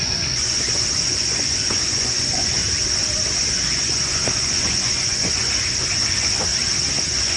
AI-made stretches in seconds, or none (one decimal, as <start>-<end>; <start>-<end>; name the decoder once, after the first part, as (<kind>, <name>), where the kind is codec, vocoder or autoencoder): 0.0-2.6 (vocoder, Vocos); 3.3-6.5; 7.0-7.4